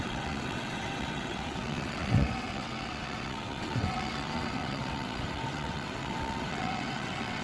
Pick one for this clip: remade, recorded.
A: remade